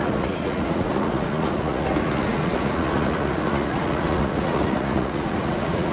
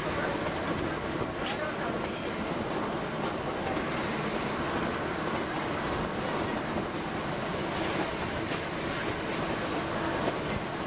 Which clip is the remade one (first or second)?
first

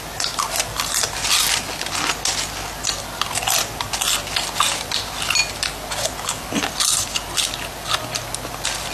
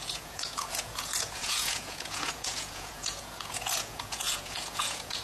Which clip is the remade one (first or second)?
second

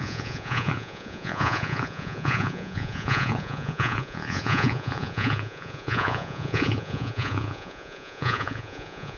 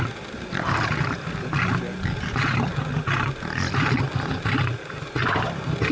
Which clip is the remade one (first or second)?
first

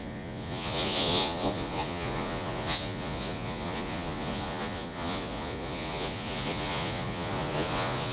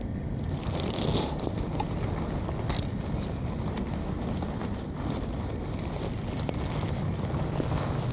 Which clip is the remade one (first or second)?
first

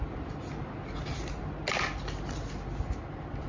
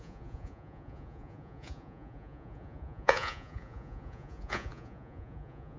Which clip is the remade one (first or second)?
second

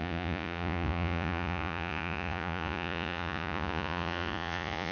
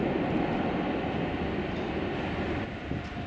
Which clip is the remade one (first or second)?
first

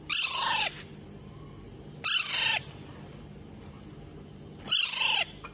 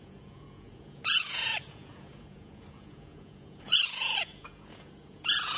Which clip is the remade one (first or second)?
second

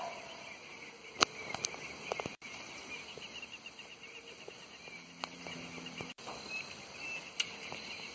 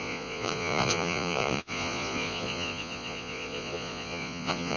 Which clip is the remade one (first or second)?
second